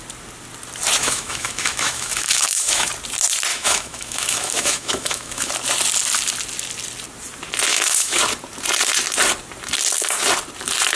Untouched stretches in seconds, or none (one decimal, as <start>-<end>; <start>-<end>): 0.0-1.0; 2.9-3.5; 5.5-7.7; 8.2-11.0